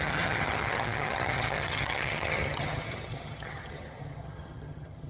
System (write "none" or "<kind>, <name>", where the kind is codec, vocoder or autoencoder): vocoder, HiFi-GAN